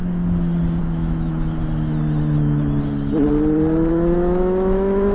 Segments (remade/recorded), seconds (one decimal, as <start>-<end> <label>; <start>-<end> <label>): 0.0-0.8 recorded; 0.8-1.6 remade; 1.6-3.9 recorded; 3.9-5.1 remade